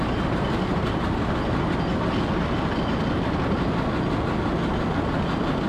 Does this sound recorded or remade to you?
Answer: recorded